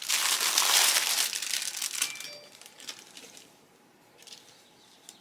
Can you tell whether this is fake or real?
real